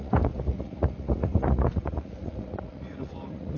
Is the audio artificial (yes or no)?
yes